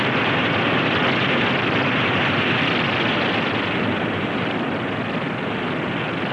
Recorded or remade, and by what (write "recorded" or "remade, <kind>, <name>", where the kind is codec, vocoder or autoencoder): recorded